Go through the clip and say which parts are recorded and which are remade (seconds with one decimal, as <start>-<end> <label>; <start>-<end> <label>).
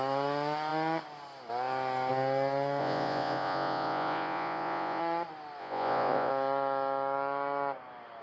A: 0.0-2.8 recorded; 2.8-5.0 remade; 5.0-5.6 recorded; 5.6-6.3 remade; 6.3-8.2 recorded